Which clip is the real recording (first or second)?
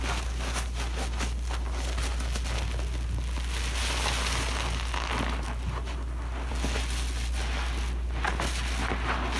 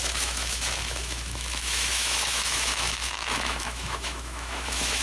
first